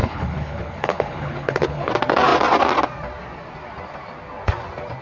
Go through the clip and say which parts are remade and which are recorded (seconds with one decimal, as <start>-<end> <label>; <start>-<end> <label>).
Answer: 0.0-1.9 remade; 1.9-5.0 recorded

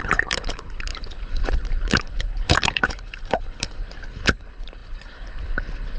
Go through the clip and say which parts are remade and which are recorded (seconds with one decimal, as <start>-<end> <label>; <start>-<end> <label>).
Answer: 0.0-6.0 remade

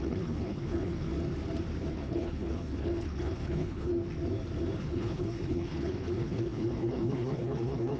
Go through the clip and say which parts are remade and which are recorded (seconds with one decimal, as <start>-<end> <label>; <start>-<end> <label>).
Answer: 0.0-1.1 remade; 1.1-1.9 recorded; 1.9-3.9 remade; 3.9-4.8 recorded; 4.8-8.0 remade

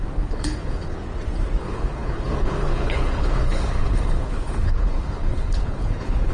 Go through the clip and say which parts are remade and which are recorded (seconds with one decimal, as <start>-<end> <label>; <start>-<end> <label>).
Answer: 0.0-1.0 remade; 1.0-1.6 recorded; 1.6-6.3 remade

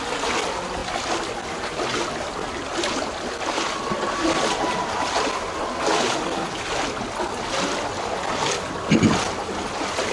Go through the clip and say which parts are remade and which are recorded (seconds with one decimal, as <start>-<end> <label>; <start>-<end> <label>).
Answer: 0.0-10.1 recorded

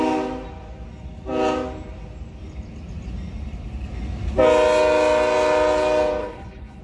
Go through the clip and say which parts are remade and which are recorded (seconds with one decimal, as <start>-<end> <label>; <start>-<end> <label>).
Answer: 0.0-6.2 recorded; 6.2-6.8 remade